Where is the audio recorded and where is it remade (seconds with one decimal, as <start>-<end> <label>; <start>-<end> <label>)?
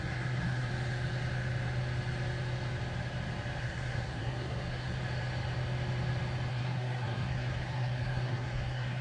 0.0-0.7 remade; 0.7-3.6 recorded; 3.6-5.0 remade; 5.0-6.5 recorded; 6.5-9.0 remade